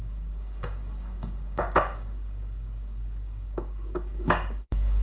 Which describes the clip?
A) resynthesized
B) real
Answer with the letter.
A